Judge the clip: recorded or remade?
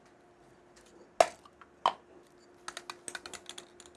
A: recorded